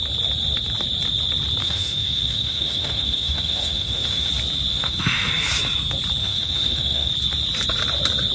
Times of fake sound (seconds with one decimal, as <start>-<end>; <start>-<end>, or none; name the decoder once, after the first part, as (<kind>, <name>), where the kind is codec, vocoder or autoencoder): 1.6-4.3 (autoencoder, DAC-VAE); 4.7-5.3; 6.2-7.1